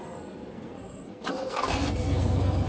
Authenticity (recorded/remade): remade